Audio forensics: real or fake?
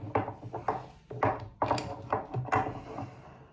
real